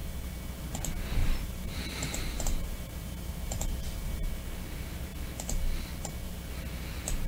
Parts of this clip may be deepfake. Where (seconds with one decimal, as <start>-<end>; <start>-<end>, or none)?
1.2-4.3